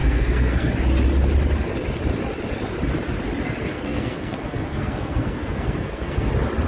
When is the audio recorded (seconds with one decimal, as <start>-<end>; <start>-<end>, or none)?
0.7-3.6; 6.3-6.7